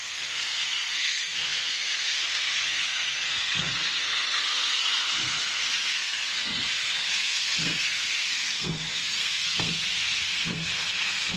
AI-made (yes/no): yes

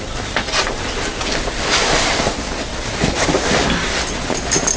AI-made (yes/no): no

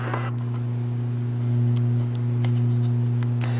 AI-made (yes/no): no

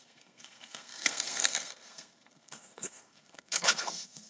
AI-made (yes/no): yes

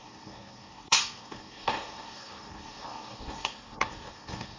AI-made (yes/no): yes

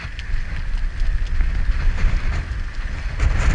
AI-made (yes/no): no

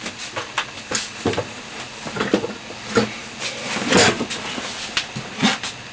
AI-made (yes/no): no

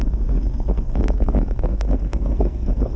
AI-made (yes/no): yes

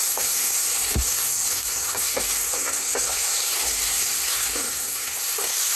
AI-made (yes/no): yes